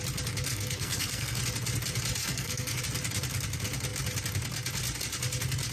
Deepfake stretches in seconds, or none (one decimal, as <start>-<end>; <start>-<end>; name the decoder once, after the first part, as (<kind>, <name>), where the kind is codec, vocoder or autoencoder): 0.5-1.4 (codec, SNAC); 2.2-2.8